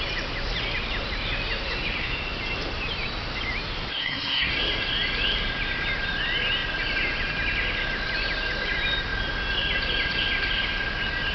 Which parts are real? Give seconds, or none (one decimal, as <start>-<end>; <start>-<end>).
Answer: 0.0-3.9; 4.5-11.3

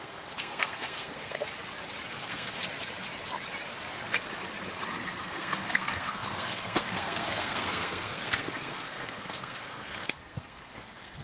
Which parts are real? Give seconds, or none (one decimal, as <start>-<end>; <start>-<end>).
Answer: 1.5-2.1; 2.6-5.2